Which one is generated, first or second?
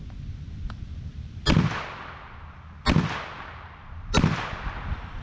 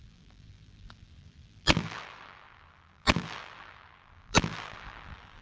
second